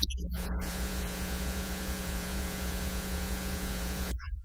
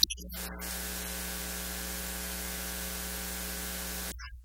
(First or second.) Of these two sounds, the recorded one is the second